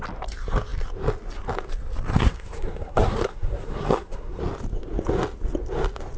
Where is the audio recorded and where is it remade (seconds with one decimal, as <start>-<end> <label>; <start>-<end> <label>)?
0.0-2.1 recorded; 2.1-4.4 remade; 4.4-6.2 recorded